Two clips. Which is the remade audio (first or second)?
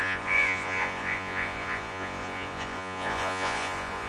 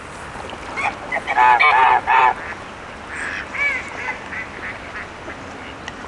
first